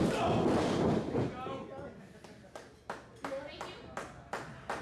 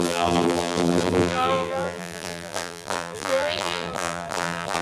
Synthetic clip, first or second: second